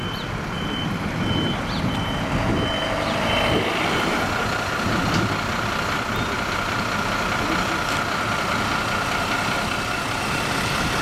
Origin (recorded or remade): recorded